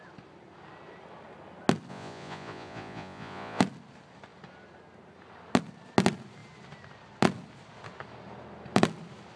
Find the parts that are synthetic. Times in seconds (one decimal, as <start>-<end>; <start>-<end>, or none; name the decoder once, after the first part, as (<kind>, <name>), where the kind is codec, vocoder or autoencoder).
1.9-3.6 (vocoder, Vocos)